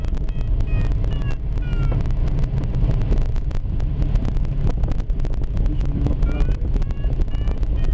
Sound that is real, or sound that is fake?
real